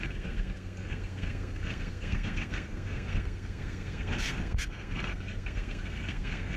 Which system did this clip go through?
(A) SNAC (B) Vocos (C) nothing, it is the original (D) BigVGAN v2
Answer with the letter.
A